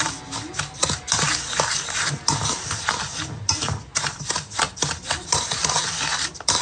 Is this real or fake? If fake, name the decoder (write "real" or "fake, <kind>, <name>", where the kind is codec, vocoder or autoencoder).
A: real